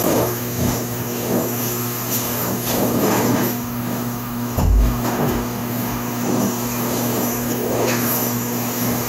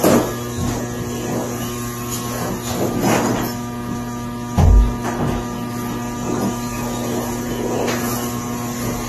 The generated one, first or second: first